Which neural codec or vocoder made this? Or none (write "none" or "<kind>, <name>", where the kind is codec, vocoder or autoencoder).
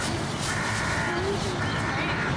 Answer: none